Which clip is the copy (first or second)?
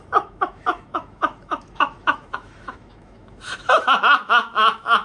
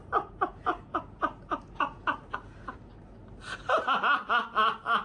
first